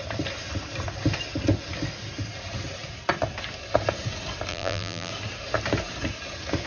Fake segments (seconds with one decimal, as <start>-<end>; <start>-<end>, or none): 4.5-5.1